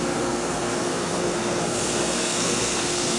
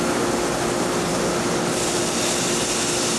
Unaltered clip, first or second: second